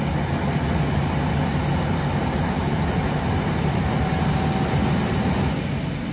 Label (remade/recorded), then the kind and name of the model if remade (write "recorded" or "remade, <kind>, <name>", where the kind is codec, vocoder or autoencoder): recorded